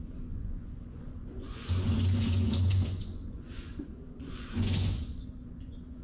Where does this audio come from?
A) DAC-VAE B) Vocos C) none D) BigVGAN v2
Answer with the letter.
B